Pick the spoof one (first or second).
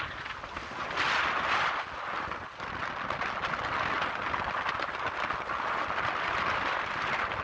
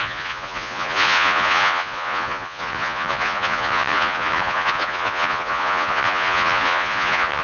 second